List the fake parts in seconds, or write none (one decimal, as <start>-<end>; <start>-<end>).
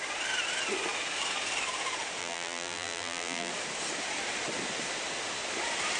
2.2-3.5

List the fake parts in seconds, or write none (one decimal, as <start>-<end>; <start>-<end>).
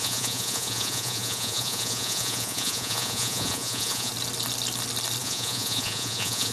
0.0-4.1; 5.2-6.5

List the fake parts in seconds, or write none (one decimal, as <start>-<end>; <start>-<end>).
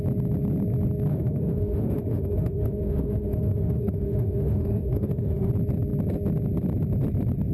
1.1-5.5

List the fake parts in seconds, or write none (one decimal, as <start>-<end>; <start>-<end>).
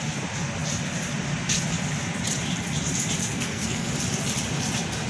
3.2-3.9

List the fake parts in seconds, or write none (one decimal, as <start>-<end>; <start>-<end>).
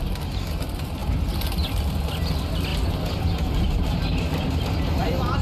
none